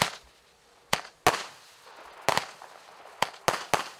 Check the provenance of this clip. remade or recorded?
recorded